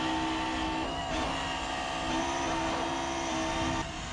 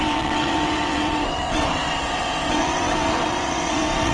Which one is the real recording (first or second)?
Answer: first